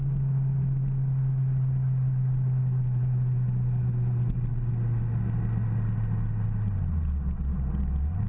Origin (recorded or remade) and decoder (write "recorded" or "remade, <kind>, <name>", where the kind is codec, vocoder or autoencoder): recorded